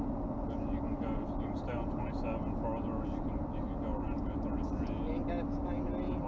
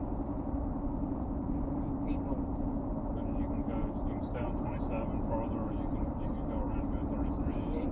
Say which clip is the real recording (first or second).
first